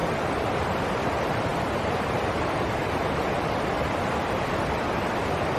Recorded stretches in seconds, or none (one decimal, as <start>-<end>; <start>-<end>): 0.0-5.6